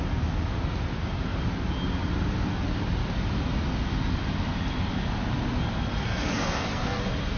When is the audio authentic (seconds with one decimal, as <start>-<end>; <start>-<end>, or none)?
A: 0.0-6.0; 7.0-7.4